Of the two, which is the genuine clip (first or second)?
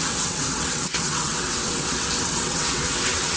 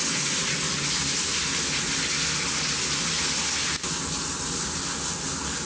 second